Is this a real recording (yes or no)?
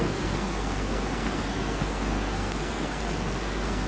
no